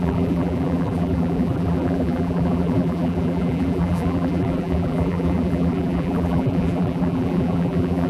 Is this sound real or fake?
fake